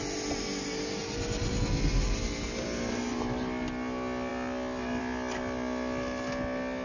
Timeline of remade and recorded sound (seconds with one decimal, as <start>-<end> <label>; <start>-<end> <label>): 0.0-6.8 recorded